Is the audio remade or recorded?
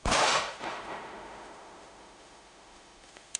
remade